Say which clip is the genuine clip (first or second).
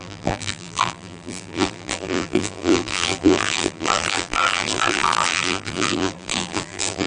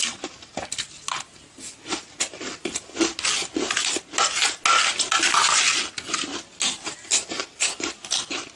second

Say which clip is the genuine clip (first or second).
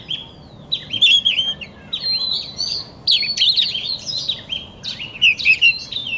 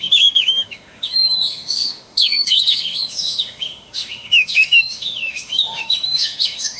first